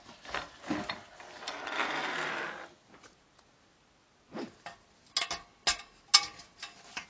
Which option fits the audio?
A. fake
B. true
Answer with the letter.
B